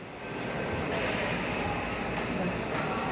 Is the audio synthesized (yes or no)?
no